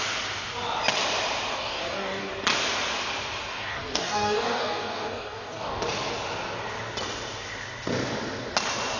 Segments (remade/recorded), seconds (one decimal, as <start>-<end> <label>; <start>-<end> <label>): 0.0-1.5 recorded; 1.5-2.3 remade; 2.3-3.5 recorded; 3.5-5.8 remade; 5.8-9.0 recorded